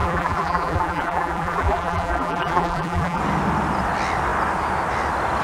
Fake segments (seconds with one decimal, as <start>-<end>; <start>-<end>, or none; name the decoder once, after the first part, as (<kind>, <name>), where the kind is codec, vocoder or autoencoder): 0.0-3.2 (vocoder, BigVGAN v2)